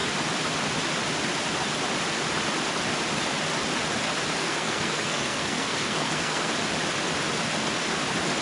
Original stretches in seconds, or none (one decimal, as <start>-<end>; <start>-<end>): 0.0-4.4; 6.5-8.4